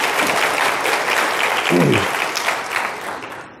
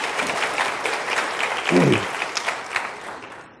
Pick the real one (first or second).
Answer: first